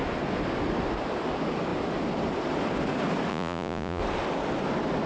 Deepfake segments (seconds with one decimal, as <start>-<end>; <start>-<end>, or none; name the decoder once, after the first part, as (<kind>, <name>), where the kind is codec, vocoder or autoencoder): 3.3-4.0 (vocoder, Vocos)